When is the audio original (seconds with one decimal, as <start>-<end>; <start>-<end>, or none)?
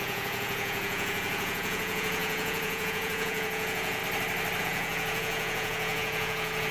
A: 4.0-4.6